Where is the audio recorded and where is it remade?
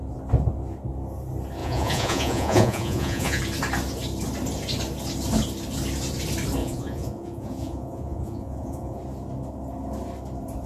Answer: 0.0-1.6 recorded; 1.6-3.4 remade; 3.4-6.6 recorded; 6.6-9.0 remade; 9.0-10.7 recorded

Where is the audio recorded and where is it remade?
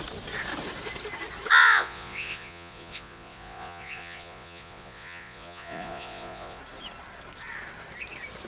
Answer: 0.0-1.6 recorded; 1.6-6.6 remade; 6.6-8.5 recorded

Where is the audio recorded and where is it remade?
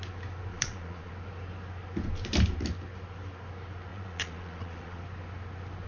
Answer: 0.0-0.5 recorded; 0.5-1.1 remade; 1.1-3.9 recorded; 3.9-5.0 remade; 5.0-5.9 recorded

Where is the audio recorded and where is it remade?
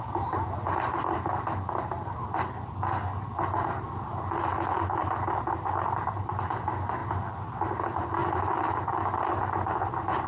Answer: 0.0-10.3 recorded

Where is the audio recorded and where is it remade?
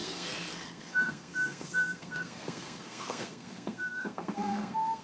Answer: 0.0-5.0 remade